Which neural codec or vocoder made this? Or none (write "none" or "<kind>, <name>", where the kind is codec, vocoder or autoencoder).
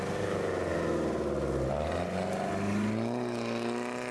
none